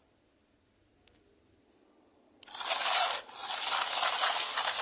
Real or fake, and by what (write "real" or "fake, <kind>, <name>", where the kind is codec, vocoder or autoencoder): real